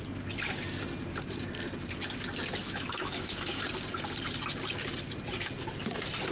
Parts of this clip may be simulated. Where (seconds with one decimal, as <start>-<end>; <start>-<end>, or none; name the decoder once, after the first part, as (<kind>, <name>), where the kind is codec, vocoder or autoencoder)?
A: 2.6-3.6 (autoencoder, DAC-VAE)